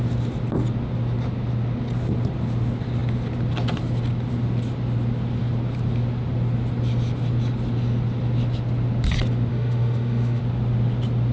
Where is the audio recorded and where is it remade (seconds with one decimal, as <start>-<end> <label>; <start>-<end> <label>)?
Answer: 0.0-9.5 recorded; 9.5-10.4 remade; 10.4-11.3 recorded